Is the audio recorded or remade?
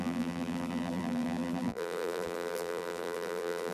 remade